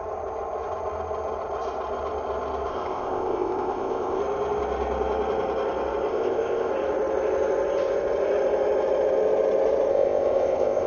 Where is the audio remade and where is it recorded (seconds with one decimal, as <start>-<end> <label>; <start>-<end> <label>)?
0.0-2.7 recorded; 2.7-4.2 remade; 4.2-6.1 recorded; 6.1-6.7 remade; 6.7-9.9 recorded; 9.9-10.9 remade